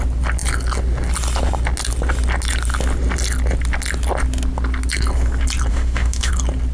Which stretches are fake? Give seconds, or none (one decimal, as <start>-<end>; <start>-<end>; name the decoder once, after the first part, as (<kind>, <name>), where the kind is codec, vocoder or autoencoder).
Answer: 5.7-6.3 (autoencoder, DAC-VAE)